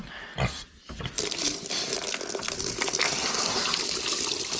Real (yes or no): yes